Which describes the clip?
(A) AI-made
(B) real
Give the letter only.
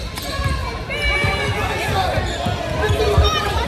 B